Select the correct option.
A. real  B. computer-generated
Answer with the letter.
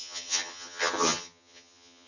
B